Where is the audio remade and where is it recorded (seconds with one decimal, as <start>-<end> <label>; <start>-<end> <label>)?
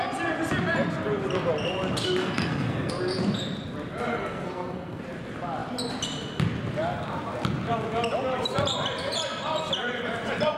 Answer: 0.0-2.2 recorded; 2.2-2.9 remade; 2.9-4.1 recorded; 4.1-5.0 remade; 5.0-10.6 recorded